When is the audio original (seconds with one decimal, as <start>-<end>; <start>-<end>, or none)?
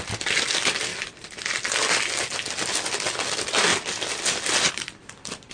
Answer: 0.9-3.3; 3.7-4.7